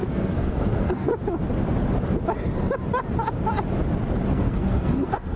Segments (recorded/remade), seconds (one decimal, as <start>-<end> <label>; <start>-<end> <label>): 0.0-1.1 remade; 1.1-4.3 recorded; 4.3-5.4 remade

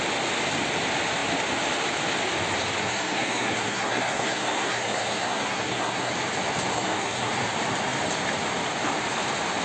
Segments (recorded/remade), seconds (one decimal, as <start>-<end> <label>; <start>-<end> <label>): 0.0-2.8 recorded; 2.8-6.1 remade; 6.1-6.7 recorded; 6.7-7.3 remade; 7.3-9.6 recorded

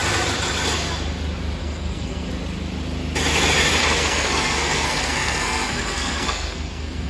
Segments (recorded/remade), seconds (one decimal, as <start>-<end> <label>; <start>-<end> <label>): 0.0-1.6 recorded; 1.6-2.3 remade; 2.3-3.8 recorded; 3.8-7.1 remade